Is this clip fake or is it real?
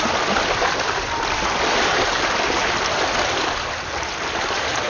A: real